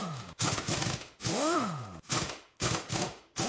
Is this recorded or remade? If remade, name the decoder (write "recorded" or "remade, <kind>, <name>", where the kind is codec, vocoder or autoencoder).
remade, autoencoder, DAC-VAE